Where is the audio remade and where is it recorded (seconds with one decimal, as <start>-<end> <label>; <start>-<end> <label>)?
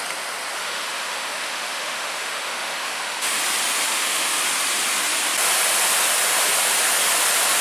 0.0-0.6 recorded; 0.6-3.4 remade; 3.4-3.9 recorded; 3.9-4.4 remade; 4.4-7.6 recorded